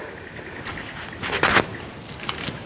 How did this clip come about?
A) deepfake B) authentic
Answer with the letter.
B